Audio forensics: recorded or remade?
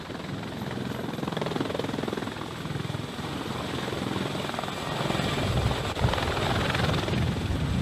recorded